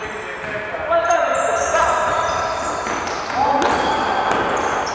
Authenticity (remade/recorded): recorded